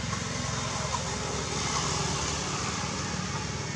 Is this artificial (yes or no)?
no